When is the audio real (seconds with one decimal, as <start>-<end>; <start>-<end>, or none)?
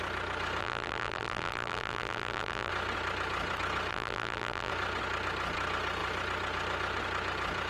0.0-0.6; 2.7-3.9; 4.7-7.7